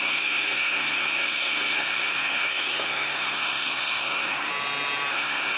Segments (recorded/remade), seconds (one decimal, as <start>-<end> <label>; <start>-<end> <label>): 0.0-4.5 remade; 4.5-5.1 recorded; 5.1-5.6 remade